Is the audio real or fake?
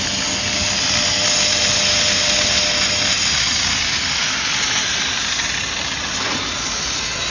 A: real